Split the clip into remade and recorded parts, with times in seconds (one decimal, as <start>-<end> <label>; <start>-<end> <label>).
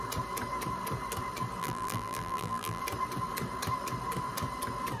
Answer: 0.0-1.6 recorded; 1.6-2.8 remade; 2.8-5.0 recorded